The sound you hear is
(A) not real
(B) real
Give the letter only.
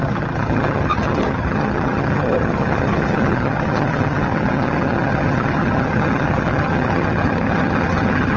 A